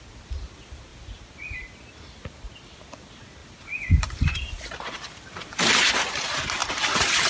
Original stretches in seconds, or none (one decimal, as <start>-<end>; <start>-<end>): 0.0-3.4; 4.7-6.6

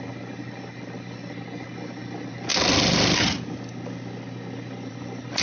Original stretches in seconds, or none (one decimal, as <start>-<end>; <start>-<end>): 0.0-5.4

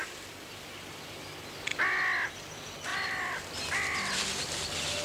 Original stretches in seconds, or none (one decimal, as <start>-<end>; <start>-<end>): 0.0-2.9; 4.4-5.0

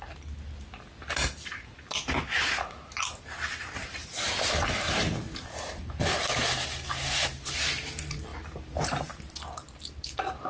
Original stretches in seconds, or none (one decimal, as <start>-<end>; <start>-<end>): 0.0-10.5

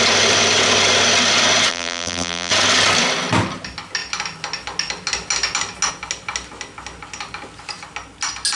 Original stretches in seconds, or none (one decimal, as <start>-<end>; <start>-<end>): 0.0-1.7; 2.5-8.5

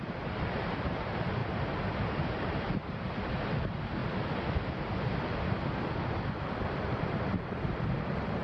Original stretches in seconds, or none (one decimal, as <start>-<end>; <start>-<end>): 4.0-4.7